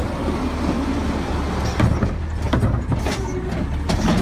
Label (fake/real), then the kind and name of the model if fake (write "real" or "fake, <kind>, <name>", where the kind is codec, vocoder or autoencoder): real